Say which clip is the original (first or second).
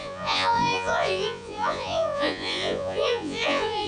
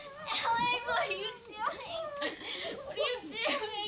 second